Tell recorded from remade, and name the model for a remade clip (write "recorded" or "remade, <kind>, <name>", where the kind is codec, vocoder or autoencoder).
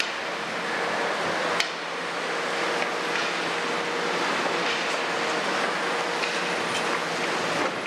recorded